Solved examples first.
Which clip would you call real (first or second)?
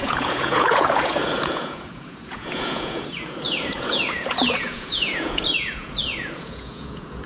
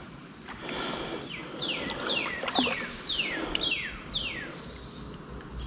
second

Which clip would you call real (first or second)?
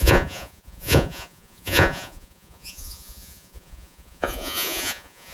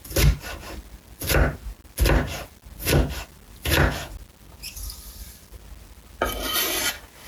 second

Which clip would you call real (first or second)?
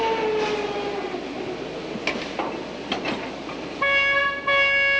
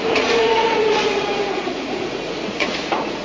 first